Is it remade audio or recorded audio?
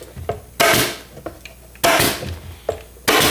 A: recorded